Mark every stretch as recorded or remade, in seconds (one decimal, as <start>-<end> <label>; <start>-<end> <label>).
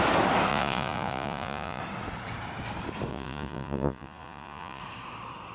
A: 0.0-0.5 recorded; 0.5-1.8 remade; 1.8-3.1 recorded; 3.1-4.8 remade; 4.8-5.5 recorded